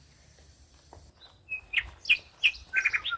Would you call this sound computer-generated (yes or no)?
no